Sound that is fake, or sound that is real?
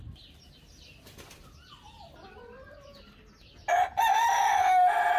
real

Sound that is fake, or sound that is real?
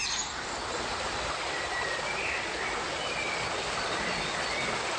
real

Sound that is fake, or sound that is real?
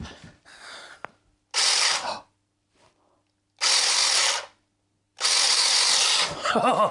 real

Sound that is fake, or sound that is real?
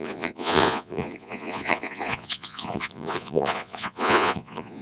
fake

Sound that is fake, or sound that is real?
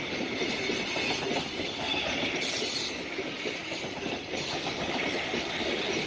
real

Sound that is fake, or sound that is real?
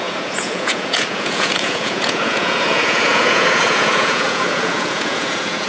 fake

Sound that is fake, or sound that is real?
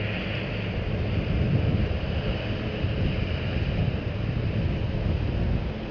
real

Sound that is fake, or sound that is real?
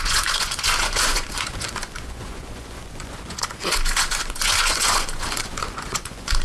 fake